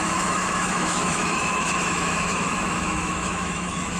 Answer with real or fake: fake